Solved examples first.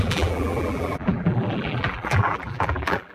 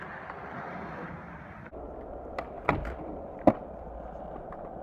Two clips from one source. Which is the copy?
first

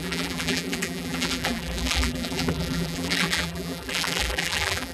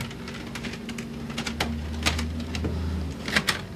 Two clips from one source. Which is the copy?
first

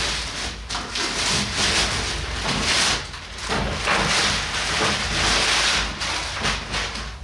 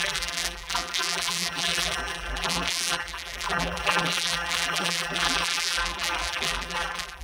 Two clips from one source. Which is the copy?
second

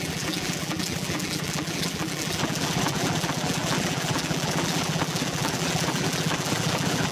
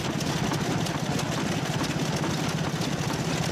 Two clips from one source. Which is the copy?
first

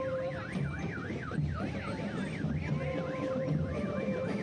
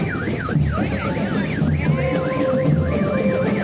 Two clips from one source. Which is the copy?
first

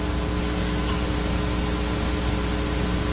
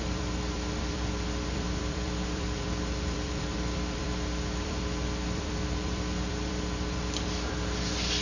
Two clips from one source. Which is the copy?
second